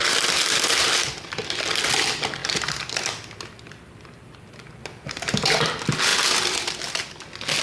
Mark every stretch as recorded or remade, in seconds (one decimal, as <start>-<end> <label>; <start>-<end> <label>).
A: 0.0-6.1 remade; 6.1-7.6 recorded